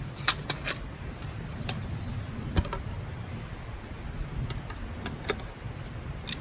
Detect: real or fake real